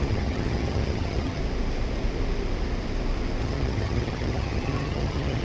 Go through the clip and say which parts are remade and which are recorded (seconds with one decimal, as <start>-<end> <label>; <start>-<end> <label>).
0.0-1.4 remade; 1.4-3.4 recorded; 3.4-5.4 remade